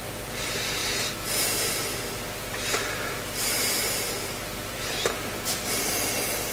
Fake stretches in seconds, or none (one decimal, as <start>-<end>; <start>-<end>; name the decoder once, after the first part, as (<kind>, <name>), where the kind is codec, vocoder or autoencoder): none